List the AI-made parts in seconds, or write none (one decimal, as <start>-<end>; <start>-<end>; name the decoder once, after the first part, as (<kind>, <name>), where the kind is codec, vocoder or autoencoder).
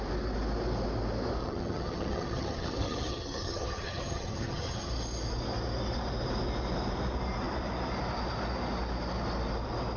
1.4-4.9 (vocoder, HiFi-GAN)